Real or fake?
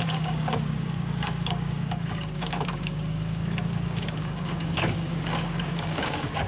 fake